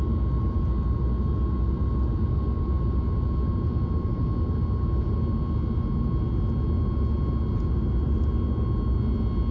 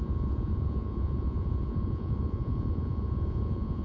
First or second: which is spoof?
second